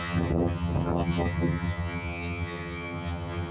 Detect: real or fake fake